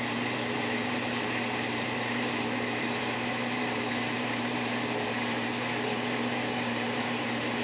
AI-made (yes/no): yes